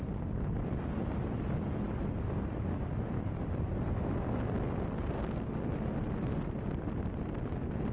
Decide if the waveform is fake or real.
real